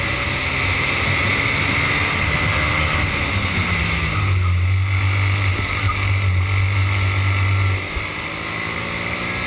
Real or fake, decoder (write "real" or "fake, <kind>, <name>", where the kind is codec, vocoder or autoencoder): real